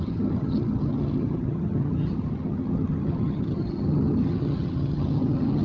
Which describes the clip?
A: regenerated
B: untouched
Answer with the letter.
A